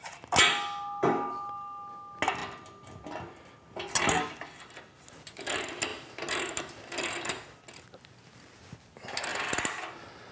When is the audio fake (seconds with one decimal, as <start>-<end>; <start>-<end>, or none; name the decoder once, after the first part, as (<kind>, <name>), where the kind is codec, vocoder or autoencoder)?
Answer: none